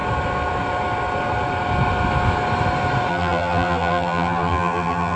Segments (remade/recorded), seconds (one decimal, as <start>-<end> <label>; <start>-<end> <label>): 0.0-3.1 recorded; 3.1-5.2 remade